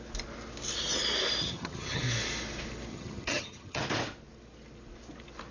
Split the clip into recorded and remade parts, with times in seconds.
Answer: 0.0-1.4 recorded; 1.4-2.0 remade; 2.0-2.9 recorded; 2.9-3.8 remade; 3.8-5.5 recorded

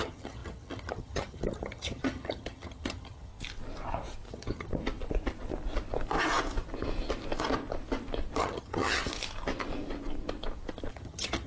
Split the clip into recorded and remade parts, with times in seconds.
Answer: 0.0-3.3 remade; 3.3-4.3 recorded; 4.3-4.7 remade; 4.7-8.4 recorded; 8.4-9.0 remade; 9.0-10.9 recorded; 10.9-11.5 remade

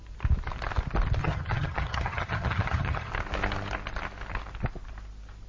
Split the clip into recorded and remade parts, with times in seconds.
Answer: 0.0-1.2 recorded; 1.2-3.1 remade; 3.1-5.5 recorded

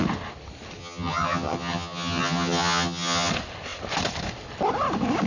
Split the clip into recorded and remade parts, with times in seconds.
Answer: 0.0-0.8 recorded; 0.8-3.3 remade; 3.3-5.3 recorded

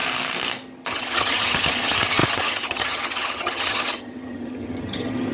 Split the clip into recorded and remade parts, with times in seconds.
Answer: 0.0-0.9 recorded; 0.9-5.3 remade

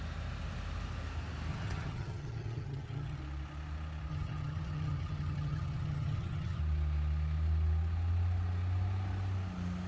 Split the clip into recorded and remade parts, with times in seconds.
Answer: 0.0-1.5 recorded; 1.5-3.2 remade; 3.2-4.1 recorded; 4.1-6.6 remade; 6.6-9.9 recorded

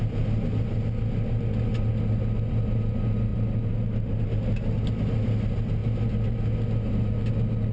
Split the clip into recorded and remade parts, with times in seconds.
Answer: 0.0-7.7 recorded